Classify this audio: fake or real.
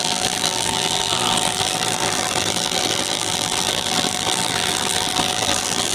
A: fake